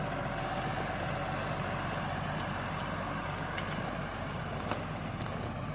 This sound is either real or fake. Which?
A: real